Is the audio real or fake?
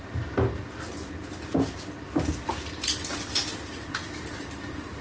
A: real